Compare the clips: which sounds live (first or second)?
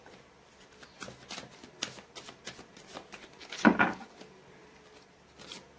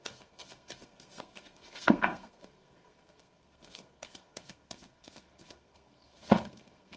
first